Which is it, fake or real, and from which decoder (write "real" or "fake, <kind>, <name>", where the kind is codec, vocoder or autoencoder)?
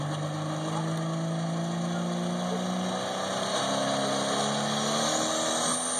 real